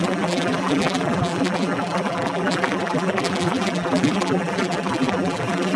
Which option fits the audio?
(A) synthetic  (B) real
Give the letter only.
A